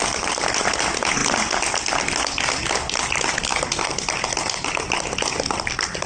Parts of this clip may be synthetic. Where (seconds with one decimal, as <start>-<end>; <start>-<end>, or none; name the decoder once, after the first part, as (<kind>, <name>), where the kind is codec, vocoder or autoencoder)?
none